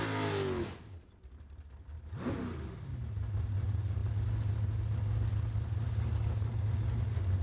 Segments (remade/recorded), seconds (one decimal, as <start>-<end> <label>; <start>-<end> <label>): 0.0-7.4 recorded